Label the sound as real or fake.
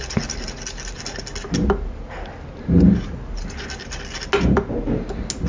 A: real